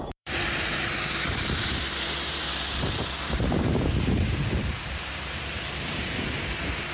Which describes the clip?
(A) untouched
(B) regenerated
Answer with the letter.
B